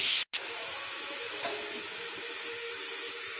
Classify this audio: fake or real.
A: fake